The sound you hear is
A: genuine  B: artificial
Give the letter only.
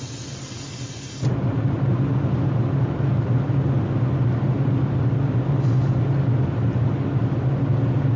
A